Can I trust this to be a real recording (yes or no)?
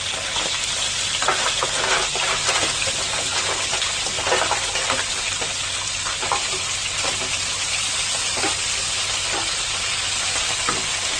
yes